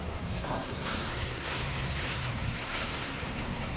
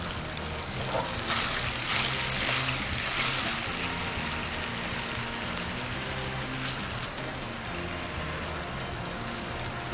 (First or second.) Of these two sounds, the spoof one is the first